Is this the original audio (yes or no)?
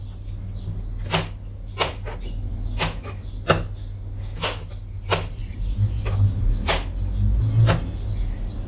yes